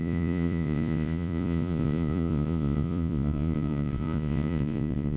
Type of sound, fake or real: fake